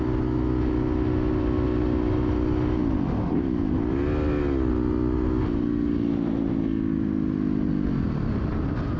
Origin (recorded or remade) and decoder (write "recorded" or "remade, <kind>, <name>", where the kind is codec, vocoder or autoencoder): recorded